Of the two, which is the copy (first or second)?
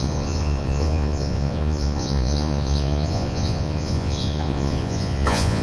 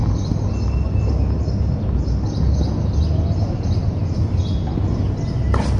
first